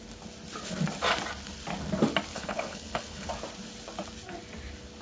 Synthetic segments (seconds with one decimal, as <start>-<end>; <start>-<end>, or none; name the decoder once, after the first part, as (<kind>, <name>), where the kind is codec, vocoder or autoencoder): 2.3-3.3 (codec, HILCodec)